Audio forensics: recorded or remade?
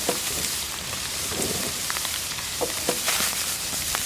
remade